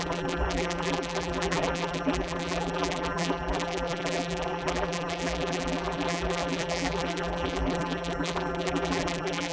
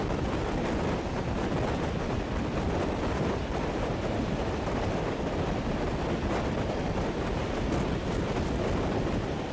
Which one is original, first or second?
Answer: second